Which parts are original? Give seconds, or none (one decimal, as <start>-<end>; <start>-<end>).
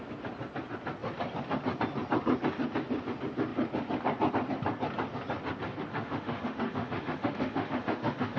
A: 0.0-5.9